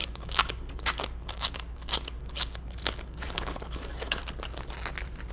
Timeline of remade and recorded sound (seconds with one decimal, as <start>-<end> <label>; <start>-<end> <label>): 0.0-4.2 remade; 4.2-5.3 recorded